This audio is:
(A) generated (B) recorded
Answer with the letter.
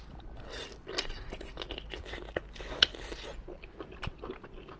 B